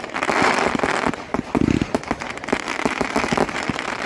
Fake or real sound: real